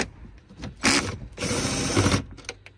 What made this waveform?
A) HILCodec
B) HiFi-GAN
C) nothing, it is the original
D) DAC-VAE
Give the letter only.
C